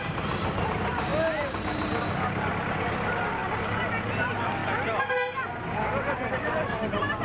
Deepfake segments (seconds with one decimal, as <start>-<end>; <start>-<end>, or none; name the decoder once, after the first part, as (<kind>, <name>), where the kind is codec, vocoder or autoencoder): 0.0-3.4 (vocoder, BigVGAN v2); 4.1-4.6; 6.3-7.2